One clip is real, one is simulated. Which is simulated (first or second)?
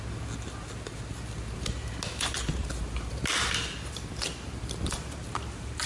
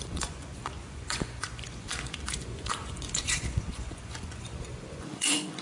second